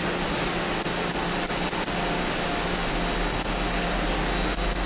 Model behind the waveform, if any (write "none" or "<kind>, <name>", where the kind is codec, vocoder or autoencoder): none